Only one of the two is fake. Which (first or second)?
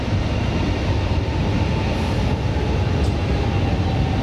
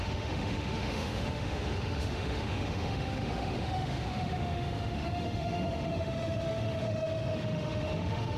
second